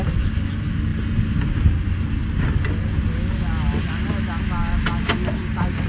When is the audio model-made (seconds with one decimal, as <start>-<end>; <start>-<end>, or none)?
none